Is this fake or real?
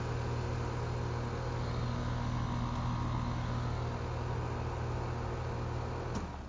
real